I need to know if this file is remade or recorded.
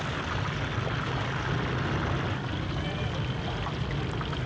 recorded